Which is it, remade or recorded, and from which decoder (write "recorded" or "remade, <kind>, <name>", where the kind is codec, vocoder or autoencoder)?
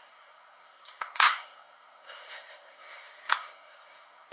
remade, codec, SNAC